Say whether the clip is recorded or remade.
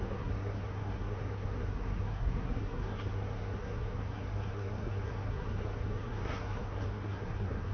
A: remade